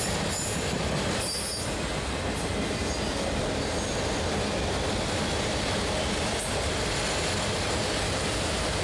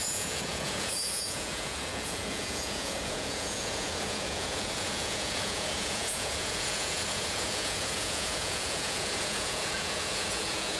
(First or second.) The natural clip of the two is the first